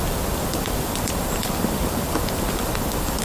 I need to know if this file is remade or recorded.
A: remade